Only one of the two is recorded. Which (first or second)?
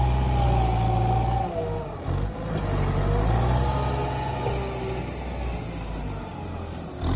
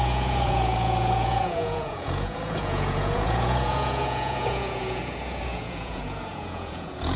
first